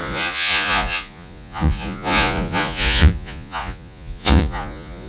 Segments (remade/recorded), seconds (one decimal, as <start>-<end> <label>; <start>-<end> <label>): 0.0-5.1 remade